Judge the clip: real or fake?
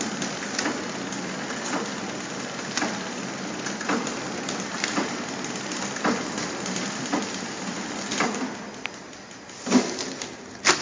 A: real